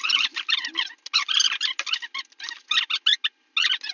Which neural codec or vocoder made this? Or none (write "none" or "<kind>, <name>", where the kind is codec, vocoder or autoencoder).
none